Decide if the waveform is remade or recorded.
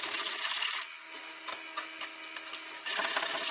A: recorded